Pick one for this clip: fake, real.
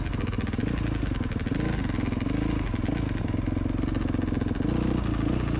real